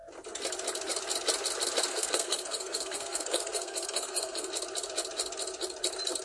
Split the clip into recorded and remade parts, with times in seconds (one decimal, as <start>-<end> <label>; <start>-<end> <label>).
0.0-1.9 recorded; 1.9-4.5 remade; 4.5-6.2 recorded